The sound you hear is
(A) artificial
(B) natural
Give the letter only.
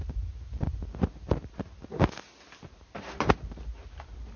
B